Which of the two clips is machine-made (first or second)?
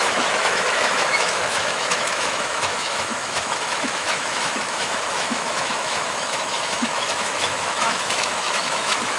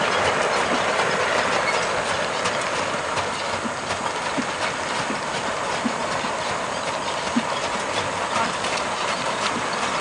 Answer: first